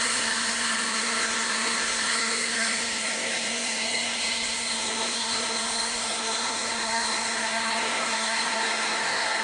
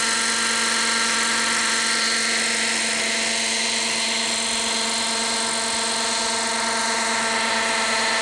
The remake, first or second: first